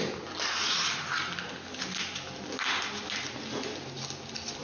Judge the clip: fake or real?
real